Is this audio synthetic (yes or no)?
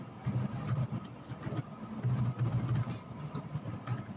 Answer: no